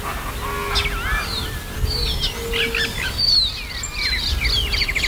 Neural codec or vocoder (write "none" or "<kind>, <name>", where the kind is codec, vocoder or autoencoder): none